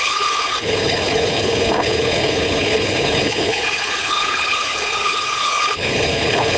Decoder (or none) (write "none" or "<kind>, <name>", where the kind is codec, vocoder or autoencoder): codec, HILCodec